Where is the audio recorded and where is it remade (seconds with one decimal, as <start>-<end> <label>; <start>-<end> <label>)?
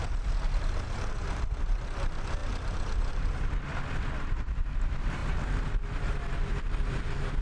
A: 0.0-7.4 remade